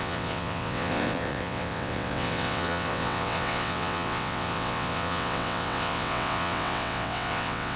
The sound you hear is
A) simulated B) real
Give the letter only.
A